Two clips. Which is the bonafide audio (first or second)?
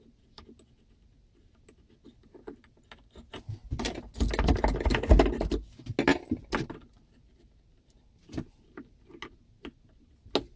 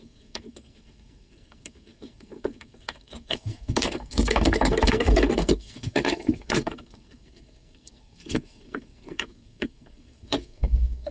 first